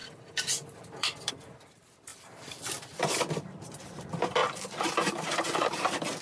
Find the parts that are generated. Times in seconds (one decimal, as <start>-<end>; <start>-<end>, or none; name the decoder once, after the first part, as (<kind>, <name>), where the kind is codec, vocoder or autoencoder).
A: 0.0-6.2 (vocoder, BigVGAN v2)